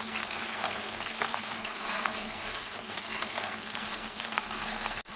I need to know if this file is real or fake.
fake